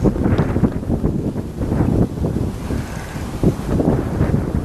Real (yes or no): no